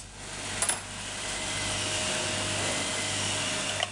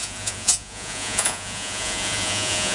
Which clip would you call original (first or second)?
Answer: first